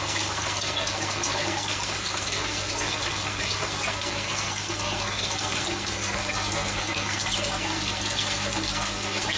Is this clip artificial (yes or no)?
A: yes